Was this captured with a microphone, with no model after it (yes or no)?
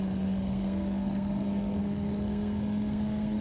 no